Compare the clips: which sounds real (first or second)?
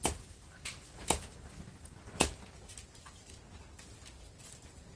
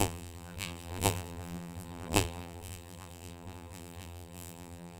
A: first